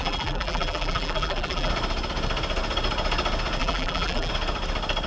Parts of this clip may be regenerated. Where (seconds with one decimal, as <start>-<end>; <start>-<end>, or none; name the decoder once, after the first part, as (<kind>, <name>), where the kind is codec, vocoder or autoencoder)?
0.0-1.7 (vocoder, BigVGAN v2); 3.6-4.3